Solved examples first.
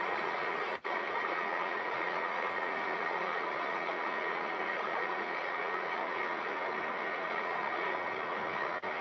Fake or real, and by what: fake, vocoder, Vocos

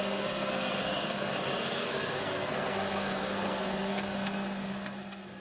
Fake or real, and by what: fake, codec, SNAC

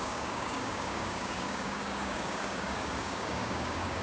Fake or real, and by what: fake, codec, DAC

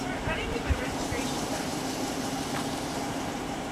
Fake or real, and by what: fake, vocoder, BigVGAN v2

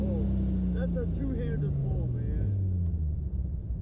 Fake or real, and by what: real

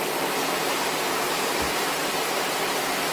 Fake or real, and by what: fake, vocoder, BigVGAN v2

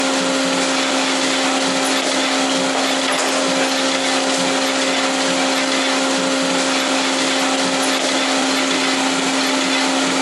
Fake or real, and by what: real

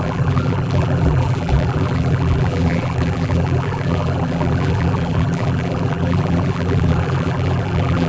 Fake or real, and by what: fake, vocoder, BigVGAN v2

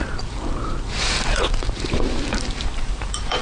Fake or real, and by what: fake, vocoder, BigVGAN v2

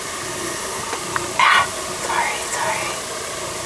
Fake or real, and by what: real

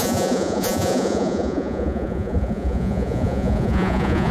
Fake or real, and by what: fake, vocoder, Vocos